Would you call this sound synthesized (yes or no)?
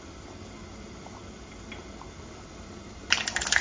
no